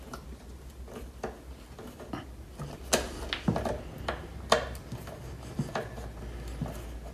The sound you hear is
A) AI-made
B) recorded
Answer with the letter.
B